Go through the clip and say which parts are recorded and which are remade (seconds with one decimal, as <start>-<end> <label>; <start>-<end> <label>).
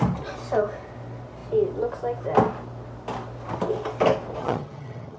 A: 0.0-4.4 recorded; 4.4-5.2 remade